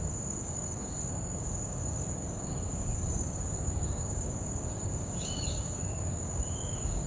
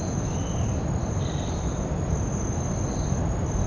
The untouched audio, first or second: second